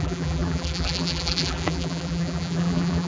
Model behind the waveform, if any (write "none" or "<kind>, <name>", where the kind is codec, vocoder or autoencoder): vocoder, BigVGAN v2